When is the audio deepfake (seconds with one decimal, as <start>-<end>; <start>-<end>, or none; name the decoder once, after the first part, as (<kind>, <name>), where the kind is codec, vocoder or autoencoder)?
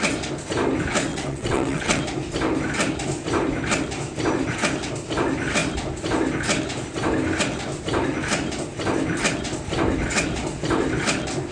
1.1-2.0 (vocoder, WaveNeXt)